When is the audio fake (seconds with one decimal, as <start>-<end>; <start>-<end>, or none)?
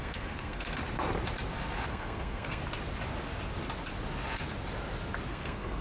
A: 0.0-0.8; 1.9-2.6; 5.3-5.8